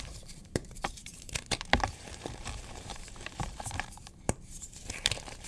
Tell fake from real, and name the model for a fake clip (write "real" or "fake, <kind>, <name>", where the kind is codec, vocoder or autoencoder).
fake, vocoder, BigVGAN v2